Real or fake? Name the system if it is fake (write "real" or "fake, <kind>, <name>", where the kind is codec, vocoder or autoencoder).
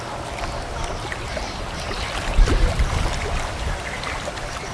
real